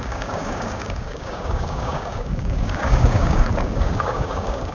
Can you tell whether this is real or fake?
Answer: fake